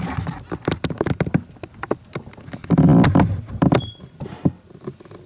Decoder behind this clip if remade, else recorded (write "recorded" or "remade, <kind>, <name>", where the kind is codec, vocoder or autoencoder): recorded